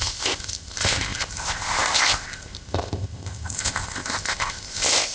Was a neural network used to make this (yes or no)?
yes